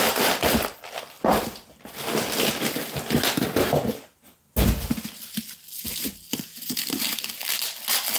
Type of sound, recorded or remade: recorded